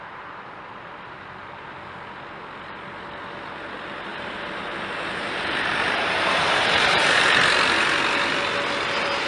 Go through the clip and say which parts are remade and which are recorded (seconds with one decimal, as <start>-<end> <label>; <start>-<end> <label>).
0.0-4.1 recorded; 4.1-5.4 remade; 5.4-6.0 recorded; 6.0-7.2 remade; 7.2-9.3 recorded

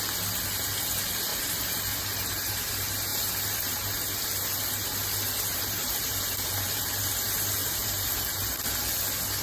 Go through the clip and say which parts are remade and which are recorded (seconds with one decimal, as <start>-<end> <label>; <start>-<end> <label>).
0.0-1.3 recorded; 1.3-2.0 remade; 2.0-5.5 recorded; 5.5-6.9 remade; 6.9-7.6 recorded; 7.6-8.6 remade; 8.6-9.4 recorded

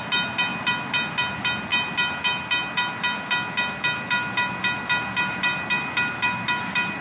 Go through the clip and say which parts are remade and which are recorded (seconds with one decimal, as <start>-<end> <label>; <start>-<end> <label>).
0.0-7.0 recorded

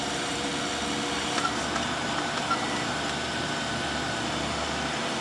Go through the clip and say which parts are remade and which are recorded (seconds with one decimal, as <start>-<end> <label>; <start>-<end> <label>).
0.0-0.5 remade; 0.5-1.2 recorded; 1.2-5.2 remade